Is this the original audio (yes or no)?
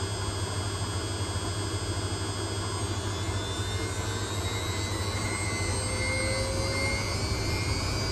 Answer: yes